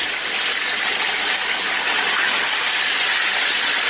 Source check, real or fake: real